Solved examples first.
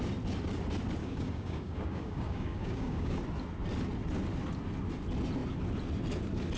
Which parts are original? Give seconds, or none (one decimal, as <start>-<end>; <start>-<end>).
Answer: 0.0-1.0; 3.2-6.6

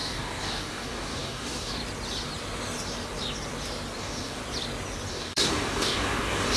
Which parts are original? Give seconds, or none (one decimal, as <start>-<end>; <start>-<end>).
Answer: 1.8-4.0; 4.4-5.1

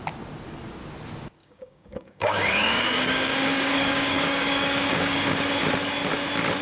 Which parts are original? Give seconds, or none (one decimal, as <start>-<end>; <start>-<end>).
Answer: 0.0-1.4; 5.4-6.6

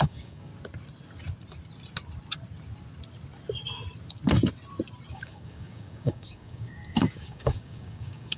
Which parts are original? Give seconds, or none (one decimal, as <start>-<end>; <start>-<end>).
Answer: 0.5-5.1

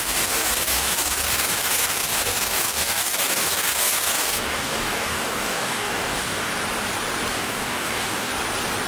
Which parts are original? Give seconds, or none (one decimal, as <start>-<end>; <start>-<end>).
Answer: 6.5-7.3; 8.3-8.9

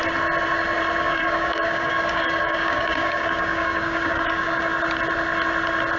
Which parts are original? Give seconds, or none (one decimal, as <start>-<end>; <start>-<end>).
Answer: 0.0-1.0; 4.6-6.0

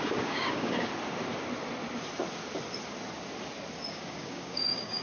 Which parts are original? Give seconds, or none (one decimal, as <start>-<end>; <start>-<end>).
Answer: 0.9-3.9

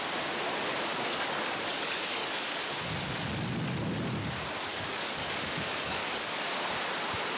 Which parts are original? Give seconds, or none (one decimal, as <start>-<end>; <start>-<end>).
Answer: 0.0-0.9; 2.6-4.7; 6.4-7.4